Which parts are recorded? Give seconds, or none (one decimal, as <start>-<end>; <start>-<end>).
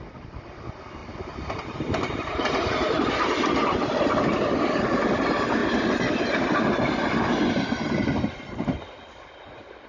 0.0-1.0; 3.1-9.9